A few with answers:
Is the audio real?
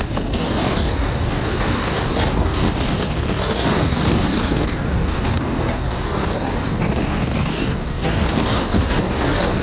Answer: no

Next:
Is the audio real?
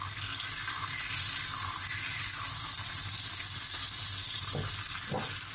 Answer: yes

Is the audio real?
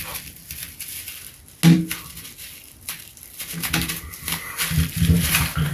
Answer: yes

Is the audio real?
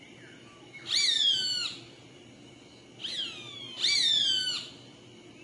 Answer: yes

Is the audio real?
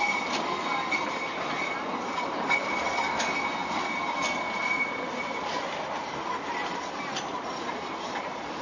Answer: yes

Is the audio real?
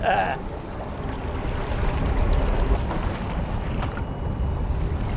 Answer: yes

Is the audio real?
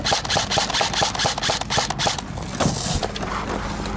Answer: yes